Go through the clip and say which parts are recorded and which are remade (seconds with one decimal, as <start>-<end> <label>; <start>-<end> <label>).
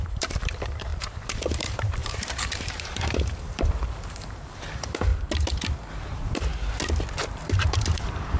0.0-5.1 remade; 5.1-5.9 recorded; 5.9-6.5 remade; 6.5-7.2 recorded; 7.2-8.4 remade